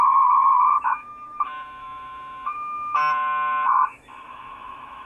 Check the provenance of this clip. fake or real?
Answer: fake